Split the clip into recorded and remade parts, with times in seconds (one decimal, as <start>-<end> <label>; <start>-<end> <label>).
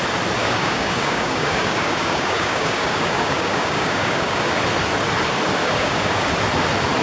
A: 0.0-0.4 recorded; 0.4-4.6 remade; 4.6-5.6 recorded; 5.6-6.3 remade; 6.3-7.0 recorded